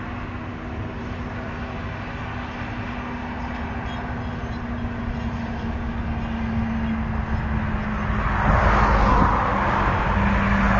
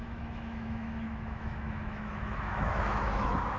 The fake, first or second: second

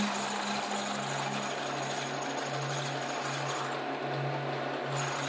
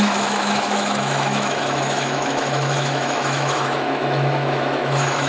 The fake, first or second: second